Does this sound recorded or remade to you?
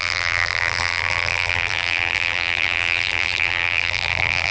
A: remade